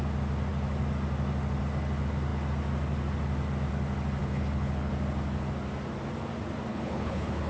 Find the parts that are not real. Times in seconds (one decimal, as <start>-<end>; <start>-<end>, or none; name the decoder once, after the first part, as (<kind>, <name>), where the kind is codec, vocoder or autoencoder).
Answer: 4.2-4.9 (codec, HILCodec); 6.7-7.5